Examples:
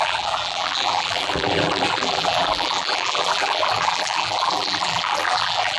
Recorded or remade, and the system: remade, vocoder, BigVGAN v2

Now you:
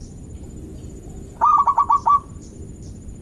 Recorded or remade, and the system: recorded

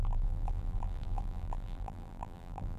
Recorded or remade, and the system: remade, vocoder, BigVGAN v2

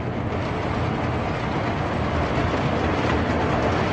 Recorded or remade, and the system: recorded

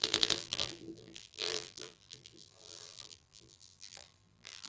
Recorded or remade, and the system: remade, vocoder, BigVGAN v2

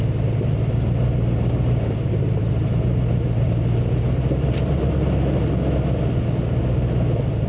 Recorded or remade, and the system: recorded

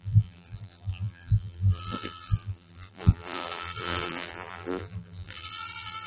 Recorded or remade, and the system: remade, vocoder, BigVGAN v2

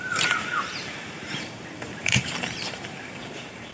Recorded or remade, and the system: remade, vocoder, BigVGAN v2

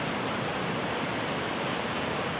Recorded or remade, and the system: remade, vocoder, BigVGAN v2